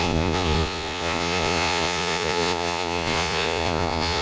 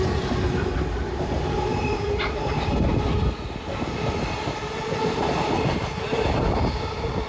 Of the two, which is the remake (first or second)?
first